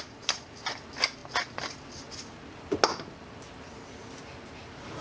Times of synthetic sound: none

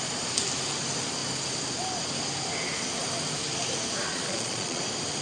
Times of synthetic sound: 4.1-4.8 (vocoder, Vocos)

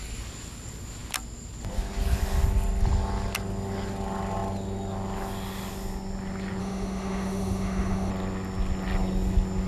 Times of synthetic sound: 6.6-8.1 (autoencoder, DAC-VAE)